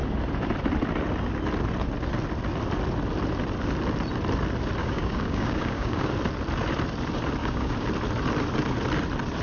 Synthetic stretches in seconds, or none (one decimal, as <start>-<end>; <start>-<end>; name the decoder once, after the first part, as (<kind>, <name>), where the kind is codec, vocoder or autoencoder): 4.8-6.1 (codec, DAC); 7.4-7.9